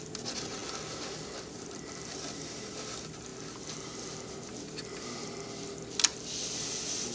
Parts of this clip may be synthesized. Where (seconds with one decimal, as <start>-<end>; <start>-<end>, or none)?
none